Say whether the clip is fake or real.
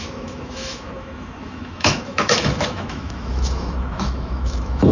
fake